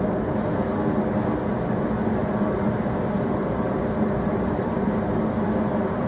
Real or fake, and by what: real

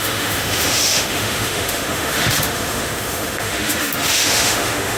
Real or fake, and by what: fake, autoencoder, DAC-VAE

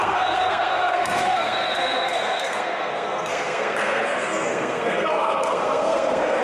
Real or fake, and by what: fake, codec, SNAC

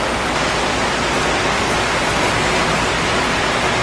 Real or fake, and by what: real